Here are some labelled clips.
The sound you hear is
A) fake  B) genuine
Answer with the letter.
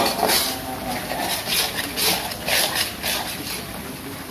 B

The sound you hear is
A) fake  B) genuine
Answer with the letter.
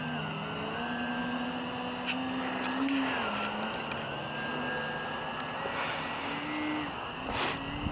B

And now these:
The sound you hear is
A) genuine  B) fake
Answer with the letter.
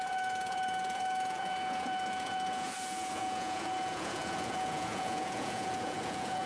B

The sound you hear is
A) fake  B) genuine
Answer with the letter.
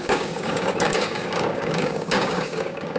A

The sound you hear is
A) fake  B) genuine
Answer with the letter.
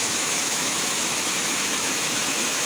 A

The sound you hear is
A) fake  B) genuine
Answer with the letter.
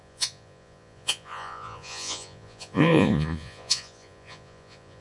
A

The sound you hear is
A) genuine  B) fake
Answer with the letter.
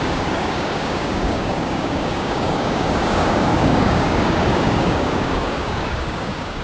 B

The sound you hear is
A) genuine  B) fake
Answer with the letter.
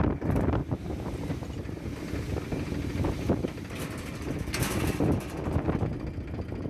A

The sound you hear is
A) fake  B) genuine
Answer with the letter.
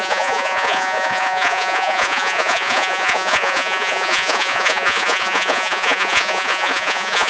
A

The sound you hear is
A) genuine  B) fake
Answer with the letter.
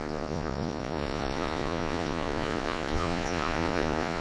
B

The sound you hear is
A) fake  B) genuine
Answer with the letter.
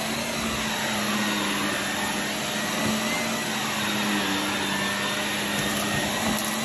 B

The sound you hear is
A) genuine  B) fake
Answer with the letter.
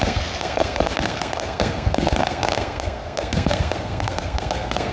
B